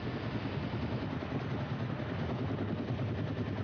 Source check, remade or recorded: recorded